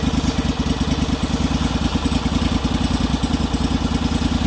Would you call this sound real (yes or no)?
yes